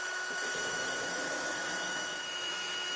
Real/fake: fake